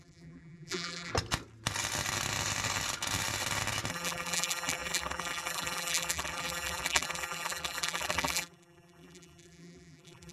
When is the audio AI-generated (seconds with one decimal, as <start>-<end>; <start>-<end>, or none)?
0.0-1.1; 3.9-10.3